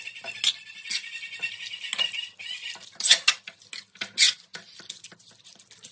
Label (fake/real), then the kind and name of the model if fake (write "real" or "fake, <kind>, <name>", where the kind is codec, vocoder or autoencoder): real